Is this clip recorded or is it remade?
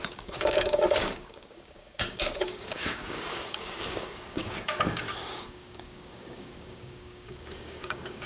remade